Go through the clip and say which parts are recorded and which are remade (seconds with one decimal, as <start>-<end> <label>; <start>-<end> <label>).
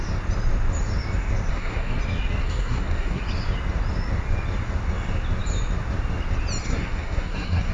0.0-1.5 recorded; 1.5-2.0 remade; 2.0-2.4 recorded; 2.4-3.2 remade; 3.2-6.7 recorded; 6.7-7.7 remade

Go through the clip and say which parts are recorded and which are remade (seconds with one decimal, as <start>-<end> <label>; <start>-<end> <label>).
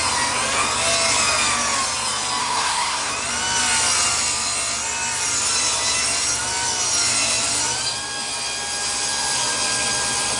0.0-2.4 recorded; 2.4-3.1 remade; 3.1-10.4 recorded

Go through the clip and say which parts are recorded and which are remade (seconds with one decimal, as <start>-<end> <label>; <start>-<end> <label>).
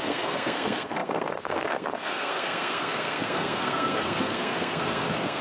0.0-5.4 remade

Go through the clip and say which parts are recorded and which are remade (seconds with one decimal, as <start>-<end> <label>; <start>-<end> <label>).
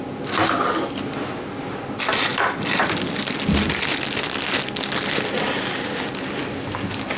0.0-7.2 recorded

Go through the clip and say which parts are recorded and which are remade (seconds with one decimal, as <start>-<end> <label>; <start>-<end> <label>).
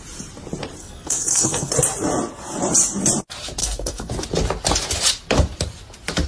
0.0-0.8 recorded; 0.8-1.7 remade; 1.7-3.6 recorded; 3.6-4.1 remade; 4.1-6.3 recorded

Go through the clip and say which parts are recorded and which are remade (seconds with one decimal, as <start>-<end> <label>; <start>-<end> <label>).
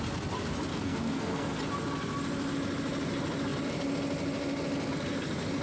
0.0-0.7 recorded; 0.7-1.6 remade; 1.6-5.6 recorded